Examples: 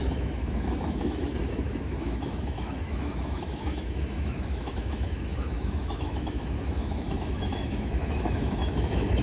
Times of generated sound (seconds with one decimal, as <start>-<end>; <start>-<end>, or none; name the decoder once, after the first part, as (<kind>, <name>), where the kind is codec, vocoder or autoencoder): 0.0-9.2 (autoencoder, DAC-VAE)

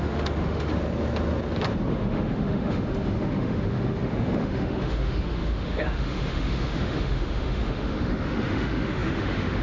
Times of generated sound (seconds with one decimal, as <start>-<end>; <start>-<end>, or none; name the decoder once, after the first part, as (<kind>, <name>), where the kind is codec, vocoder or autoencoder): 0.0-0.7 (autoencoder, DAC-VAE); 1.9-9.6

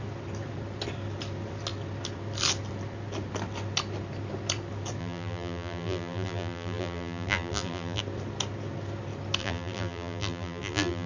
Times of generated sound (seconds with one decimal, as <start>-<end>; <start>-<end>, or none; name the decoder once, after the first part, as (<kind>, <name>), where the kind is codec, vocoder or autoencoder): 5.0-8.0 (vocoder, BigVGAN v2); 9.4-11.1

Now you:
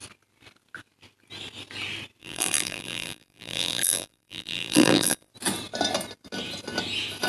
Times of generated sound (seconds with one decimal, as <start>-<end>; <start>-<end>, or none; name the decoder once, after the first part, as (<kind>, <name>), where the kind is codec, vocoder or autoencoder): 2.2-5.3 (vocoder, BigVGAN v2)

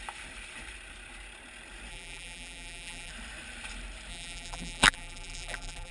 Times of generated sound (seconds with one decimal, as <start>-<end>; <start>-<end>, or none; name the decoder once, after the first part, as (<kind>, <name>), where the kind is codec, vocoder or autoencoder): 1.9-3.1 (vocoder, BigVGAN v2); 4.1-5.9

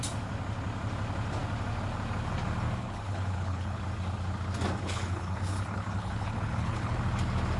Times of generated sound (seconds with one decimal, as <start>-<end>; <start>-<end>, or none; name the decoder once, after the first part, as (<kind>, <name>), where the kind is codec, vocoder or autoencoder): 2.8-3.8 (codec, HILCodec); 4.8-7.0